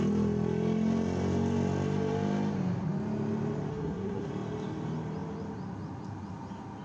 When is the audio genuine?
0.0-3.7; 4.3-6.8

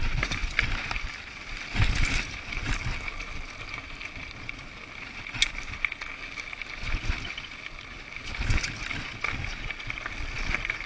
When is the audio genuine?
0.0-10.9

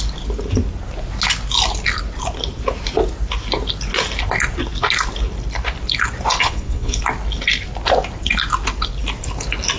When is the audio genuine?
0.0-6.4; 7.0-9.8

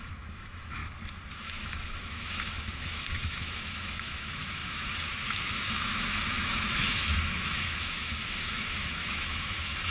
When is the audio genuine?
0.8-1.3

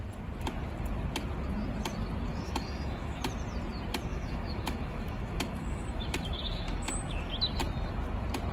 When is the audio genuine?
0.0-2.3; 3.2-4.1; 6.9-8.5

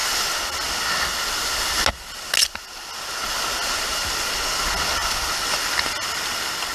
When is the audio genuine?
0.0-6.7

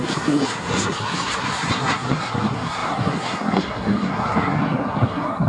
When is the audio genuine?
none